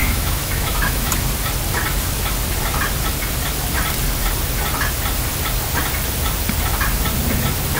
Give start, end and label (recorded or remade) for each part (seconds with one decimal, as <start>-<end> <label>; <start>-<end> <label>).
0.0-1.1 remade; 1.1-7.8 recorded